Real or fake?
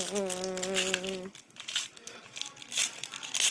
real